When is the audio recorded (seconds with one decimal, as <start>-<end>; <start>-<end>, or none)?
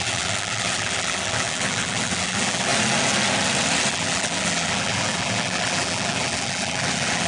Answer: 2.7-3.9